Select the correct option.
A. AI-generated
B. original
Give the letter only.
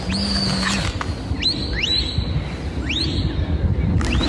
B